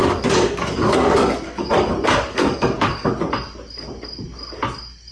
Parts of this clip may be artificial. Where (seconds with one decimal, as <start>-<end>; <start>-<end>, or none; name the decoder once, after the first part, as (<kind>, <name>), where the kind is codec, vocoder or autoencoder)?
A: 0.0-3.1 (codec, DAC)